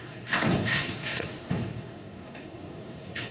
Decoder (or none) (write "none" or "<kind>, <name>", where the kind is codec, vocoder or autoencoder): codec, SNAC